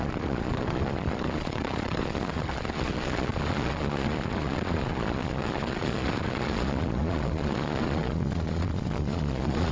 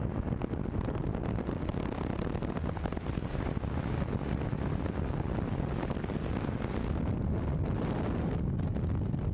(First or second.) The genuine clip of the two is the second